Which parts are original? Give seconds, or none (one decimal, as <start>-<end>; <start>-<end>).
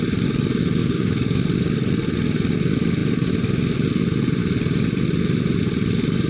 0.0-0.8; 1.4-6.3